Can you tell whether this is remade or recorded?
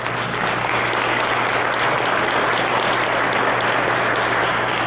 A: recorded